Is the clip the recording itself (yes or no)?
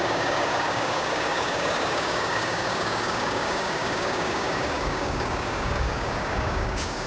no